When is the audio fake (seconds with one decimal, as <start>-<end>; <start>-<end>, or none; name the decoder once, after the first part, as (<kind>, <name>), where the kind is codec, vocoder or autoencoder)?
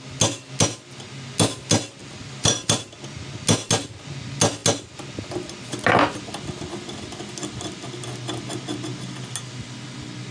2.0-2.8 (vocoder, BigVGAN v2)